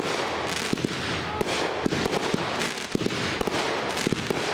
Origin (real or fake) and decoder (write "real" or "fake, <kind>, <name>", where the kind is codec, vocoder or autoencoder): real